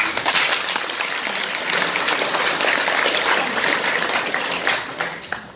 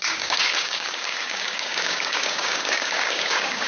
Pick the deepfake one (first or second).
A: second